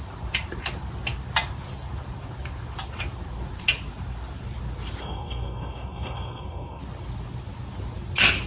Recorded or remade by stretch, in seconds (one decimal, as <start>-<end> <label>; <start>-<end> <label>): 0.0-5.0 recorded; 5.0-6.8 remade; 6.8-8.5 recorded

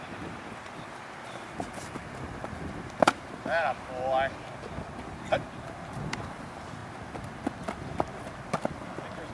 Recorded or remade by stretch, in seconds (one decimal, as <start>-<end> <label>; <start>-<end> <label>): 0.0-3.7 remade; 3.7-5.0 recorded; 5.0-6.8 remade; 6.8-8.7 recorded; 8.7-9.3 remade

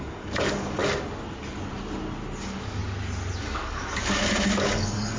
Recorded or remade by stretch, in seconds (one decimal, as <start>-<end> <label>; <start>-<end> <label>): 0.0-0.8 remade; 0.8-2.4 recorded; 2.4-2.8 remade; 2.8-3.4 recorded; 3.4-5.2 remade

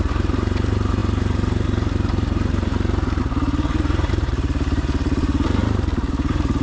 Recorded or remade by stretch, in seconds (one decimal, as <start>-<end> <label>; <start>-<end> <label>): 0.0-5.6 remade; 5.6-6.1 recorded; 6.1-6.6 remade

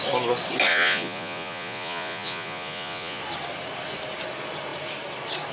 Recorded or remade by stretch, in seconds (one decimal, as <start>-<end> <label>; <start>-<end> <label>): 0.0-0.7 recorded; 0.7-3.2 remade; 3.2-5.5 recorded

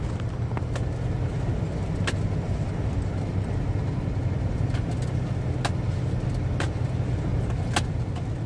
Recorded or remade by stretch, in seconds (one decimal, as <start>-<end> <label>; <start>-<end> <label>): 0.0-8.5 recorded

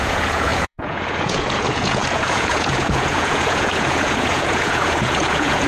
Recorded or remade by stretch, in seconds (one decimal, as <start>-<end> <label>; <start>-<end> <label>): 0.0-5.7 remade

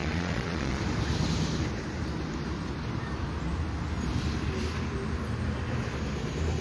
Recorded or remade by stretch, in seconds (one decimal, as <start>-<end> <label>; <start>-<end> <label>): 0.0-0.8 remade; 0.8-6.6 recorded